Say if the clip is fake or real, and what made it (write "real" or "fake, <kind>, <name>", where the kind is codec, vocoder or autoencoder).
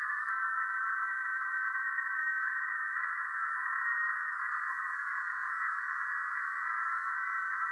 fake, codec, SNAC